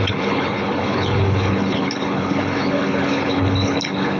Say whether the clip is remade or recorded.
remade